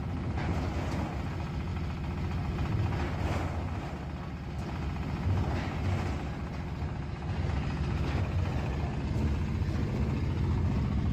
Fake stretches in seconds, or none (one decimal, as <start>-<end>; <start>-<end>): none